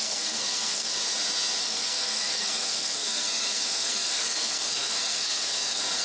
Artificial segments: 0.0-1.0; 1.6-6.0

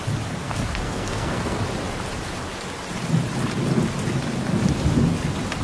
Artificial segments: 0.4-1.6